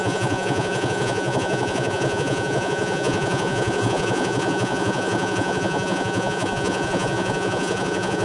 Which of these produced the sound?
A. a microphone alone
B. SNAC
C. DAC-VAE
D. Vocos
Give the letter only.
D